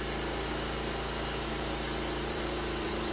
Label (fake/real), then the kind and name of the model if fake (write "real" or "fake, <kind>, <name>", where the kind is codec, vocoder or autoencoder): fake, vocoder, BigVGAN v2